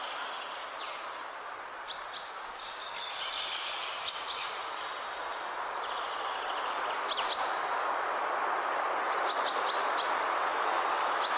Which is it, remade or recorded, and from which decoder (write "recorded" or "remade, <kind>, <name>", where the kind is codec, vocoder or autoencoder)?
recorded